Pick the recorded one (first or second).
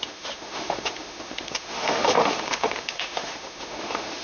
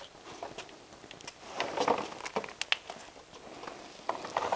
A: second